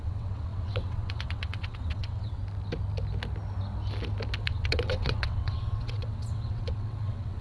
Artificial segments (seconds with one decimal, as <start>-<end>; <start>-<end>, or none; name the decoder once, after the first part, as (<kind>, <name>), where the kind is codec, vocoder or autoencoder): 0.0-2.4 (vocoder, WaveNeXt); 4.4-7.4